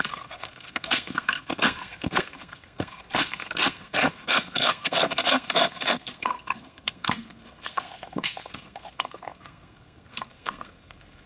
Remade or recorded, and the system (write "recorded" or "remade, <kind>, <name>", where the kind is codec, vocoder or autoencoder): remade, codec, SNAC